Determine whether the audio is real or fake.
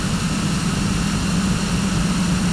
real